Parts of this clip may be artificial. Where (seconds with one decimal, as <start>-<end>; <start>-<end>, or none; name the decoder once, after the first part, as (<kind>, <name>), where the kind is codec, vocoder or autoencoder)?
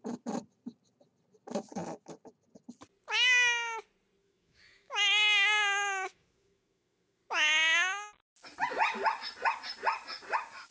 4.2-7.2 (autoencoder, DAC-VAE)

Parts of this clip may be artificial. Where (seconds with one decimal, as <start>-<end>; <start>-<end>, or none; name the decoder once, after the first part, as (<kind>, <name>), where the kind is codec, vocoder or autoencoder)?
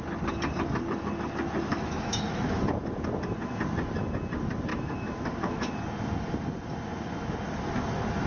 1.7-2.7 (autoencoder, DAC-VAE); 4.7-5.7